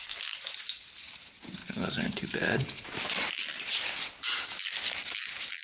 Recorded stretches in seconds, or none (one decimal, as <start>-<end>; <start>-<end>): 0.0-1.6; 3.7-5.6